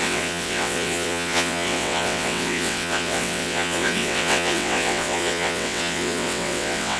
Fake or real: fake